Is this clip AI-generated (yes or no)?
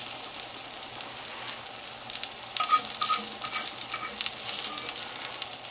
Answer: no